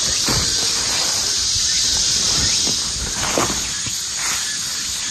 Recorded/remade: recorded